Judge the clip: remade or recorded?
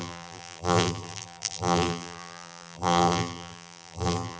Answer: remade